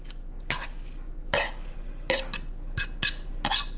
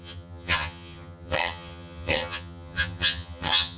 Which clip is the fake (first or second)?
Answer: second